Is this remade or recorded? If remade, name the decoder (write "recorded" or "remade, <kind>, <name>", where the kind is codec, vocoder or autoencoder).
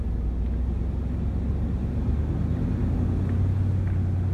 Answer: recorded